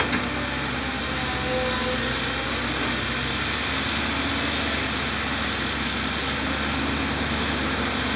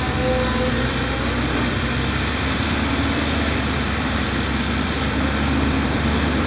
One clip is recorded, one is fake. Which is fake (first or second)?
second